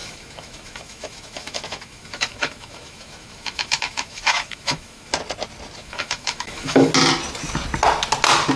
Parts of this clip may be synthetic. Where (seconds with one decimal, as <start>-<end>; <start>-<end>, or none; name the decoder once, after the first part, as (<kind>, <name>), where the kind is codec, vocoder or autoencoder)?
0.0-5.1 (autoencoder, DAC-VAE); 5.8-6.9